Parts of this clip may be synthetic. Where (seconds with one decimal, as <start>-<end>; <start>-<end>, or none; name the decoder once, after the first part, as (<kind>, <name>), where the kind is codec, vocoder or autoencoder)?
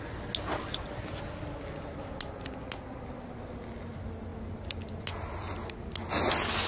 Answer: none